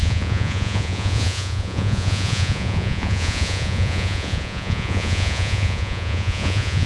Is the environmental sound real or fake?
fake